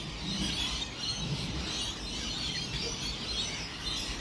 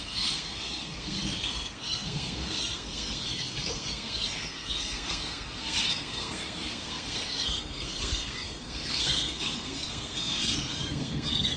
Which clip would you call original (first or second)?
first